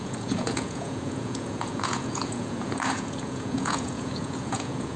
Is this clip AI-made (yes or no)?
yes